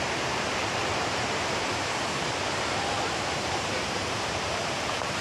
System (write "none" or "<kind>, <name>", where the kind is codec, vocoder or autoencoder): vocoder, BigVGAN v2